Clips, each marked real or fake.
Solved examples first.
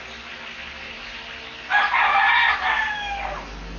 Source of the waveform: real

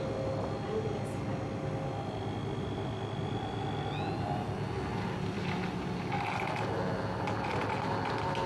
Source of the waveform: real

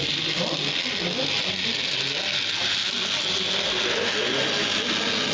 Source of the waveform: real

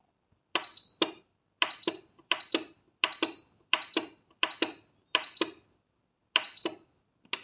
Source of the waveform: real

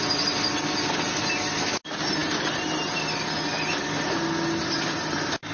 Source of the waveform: real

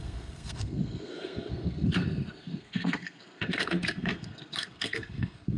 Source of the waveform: fake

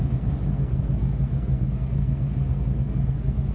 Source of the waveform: fake